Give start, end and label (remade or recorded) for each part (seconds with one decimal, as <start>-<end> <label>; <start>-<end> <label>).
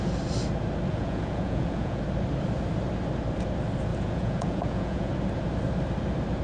0.0-0.9 recorded; 0.9-2.0 remade; 2.0-3.9 recorded; 3.9-5.1 remade; 5.1-6.4 recorded